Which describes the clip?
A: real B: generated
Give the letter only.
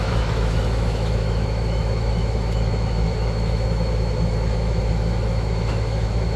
B